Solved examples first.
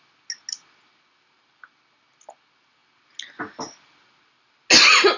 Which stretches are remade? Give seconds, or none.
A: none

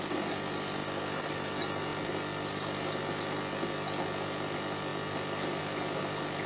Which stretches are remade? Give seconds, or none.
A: none